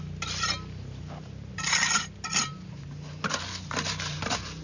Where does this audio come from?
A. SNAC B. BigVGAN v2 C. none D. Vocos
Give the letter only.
C